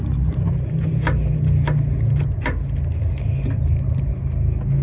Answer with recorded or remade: recorded